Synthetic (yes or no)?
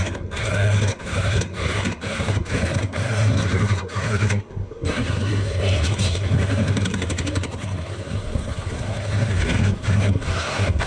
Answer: yes